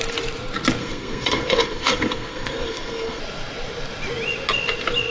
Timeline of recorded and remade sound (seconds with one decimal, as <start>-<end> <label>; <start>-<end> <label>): 0.0-0.8 recorded; 0.8-3.2 remade; 3.2-5.1 recorded